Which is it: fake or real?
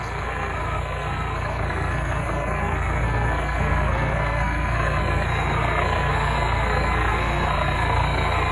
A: fake